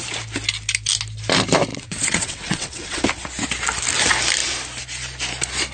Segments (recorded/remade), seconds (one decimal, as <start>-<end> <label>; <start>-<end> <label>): 0.0-1.7 recorded; 1.7-3.0 remade; 3.0-5.7 recorded